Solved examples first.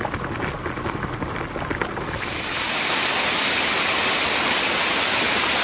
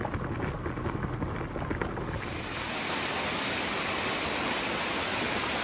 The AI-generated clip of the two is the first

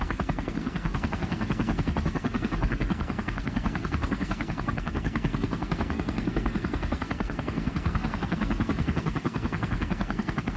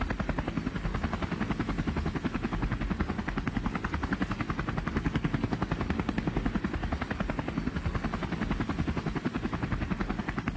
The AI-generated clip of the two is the first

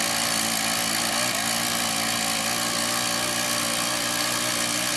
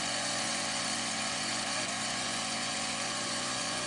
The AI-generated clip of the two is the second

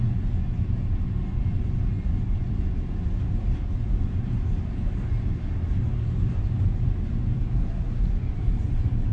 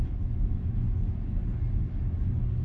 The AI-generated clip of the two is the first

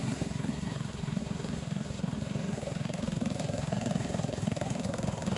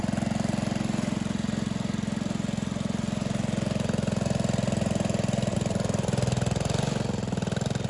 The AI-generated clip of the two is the first